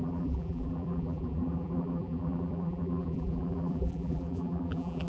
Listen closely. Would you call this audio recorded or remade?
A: remade